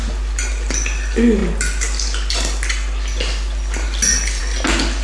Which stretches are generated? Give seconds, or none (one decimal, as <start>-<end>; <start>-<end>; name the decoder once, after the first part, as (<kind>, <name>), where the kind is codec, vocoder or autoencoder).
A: none